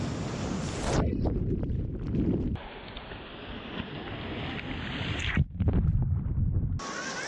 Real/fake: real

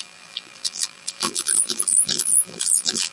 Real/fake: fake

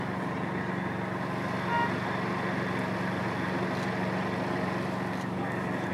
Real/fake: real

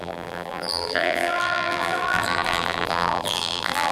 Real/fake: fake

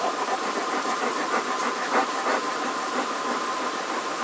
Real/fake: fake